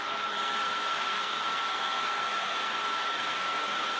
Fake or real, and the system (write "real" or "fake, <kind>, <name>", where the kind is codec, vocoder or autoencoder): fake, codec, SNAC